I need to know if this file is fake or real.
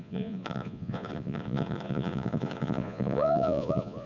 fake